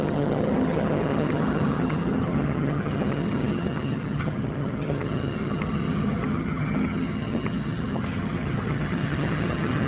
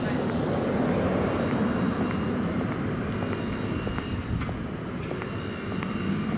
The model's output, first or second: first